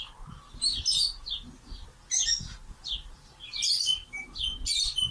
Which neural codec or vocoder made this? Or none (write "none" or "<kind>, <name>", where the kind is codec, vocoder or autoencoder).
none